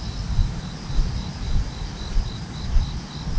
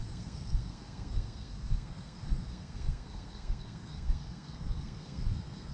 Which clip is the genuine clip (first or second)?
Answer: first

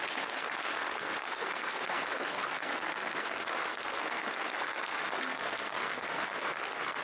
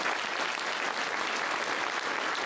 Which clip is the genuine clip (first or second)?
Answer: second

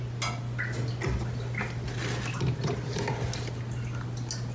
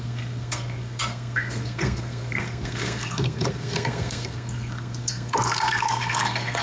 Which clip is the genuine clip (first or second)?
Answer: first